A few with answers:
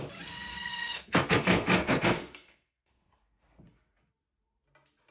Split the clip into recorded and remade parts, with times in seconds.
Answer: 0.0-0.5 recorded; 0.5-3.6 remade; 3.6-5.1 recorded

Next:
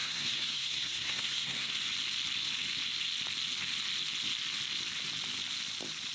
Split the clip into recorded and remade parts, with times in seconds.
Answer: 0.0-1.7 remade; 1.7-6.1 recorded

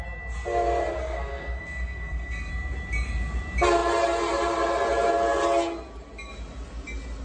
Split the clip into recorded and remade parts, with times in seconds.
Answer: 0.0-1.0 recorded; 1.0-2.5 remade; 2.5-7.2 recorded